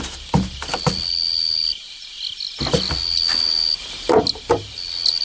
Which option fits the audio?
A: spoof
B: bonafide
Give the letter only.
B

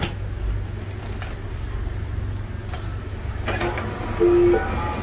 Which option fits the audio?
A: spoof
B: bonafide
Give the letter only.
B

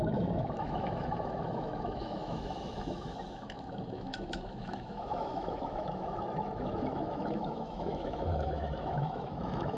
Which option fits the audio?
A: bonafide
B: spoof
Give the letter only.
B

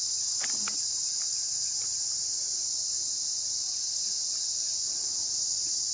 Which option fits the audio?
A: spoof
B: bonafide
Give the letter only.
B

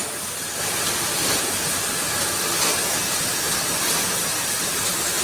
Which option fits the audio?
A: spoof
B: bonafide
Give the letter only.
B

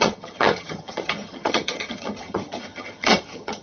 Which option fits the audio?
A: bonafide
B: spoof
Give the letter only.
B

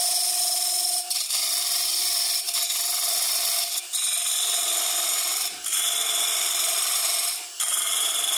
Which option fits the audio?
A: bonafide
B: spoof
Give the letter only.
B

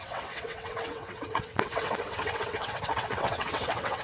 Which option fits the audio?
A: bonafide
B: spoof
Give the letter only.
B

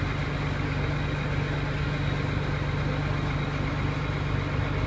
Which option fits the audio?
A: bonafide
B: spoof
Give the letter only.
A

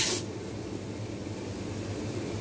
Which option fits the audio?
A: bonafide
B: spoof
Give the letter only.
A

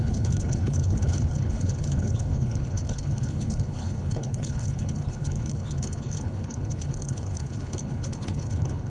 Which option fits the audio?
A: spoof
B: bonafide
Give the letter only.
A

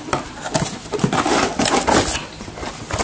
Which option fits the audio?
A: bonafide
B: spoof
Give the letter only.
A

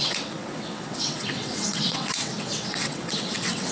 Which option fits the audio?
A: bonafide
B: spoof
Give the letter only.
B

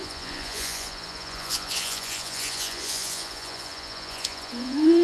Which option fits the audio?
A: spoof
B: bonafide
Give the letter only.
A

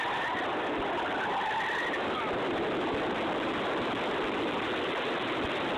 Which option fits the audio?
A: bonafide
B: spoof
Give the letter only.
A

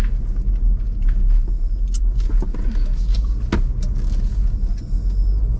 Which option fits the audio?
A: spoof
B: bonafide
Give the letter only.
B